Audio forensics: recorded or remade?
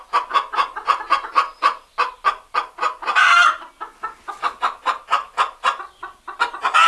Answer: recorded